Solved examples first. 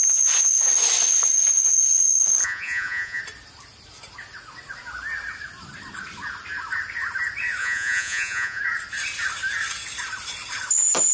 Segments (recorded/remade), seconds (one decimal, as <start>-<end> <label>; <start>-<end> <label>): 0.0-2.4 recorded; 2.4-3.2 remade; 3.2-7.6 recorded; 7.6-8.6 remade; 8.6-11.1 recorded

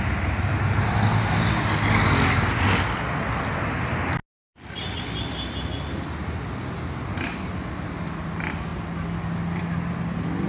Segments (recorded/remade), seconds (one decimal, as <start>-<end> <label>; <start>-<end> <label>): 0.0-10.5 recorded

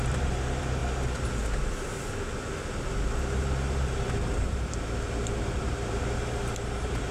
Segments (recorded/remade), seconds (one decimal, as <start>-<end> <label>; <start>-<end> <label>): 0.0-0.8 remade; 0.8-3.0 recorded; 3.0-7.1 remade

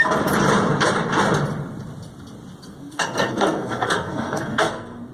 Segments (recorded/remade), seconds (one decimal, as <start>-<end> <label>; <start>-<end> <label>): 0.0-2.6 recorded; 2.6-5.1 remade

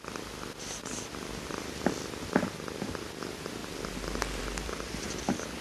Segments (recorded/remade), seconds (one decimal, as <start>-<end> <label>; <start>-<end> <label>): 0.0-5.6 recorded

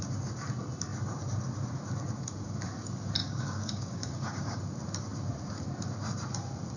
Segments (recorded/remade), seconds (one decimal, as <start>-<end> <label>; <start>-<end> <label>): 0.0-3.2 recorded; 3.2-4.6 remade; 4.6-6.8 recorded